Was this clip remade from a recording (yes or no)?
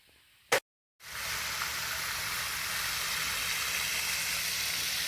no